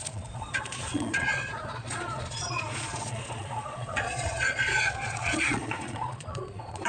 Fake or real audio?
fake